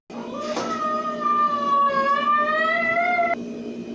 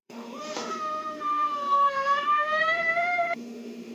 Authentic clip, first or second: first